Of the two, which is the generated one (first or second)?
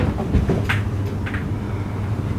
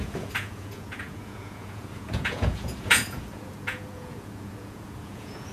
second